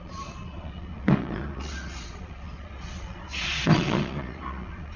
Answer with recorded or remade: remade